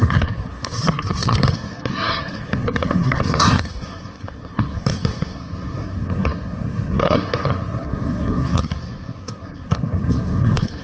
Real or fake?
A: fake